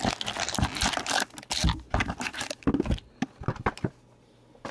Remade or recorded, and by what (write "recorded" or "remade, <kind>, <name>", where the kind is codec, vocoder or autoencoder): recorded